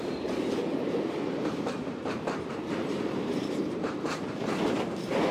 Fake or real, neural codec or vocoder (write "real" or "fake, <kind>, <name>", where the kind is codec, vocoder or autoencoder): fake, vocoder, BigVGAN v2